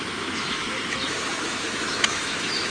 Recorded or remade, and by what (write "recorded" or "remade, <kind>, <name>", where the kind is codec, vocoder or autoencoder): remade, autoencoder, DAC-VAE